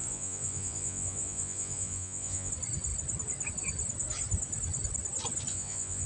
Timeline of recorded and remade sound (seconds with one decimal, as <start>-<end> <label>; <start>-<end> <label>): 0.0-2.5 remade; 2.5-5.5 recorded; 5.5-6.1 remade